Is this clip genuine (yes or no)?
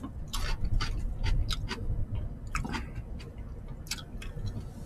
yes